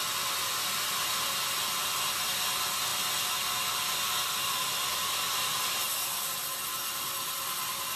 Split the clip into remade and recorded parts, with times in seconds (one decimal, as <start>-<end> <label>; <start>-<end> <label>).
0.0-8.0 recorded